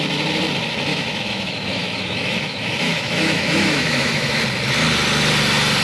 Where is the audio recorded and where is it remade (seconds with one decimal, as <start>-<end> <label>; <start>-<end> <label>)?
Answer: 0.0-0.9 recorded; 0.9-4.4 remade; 4.4-5.8 recorded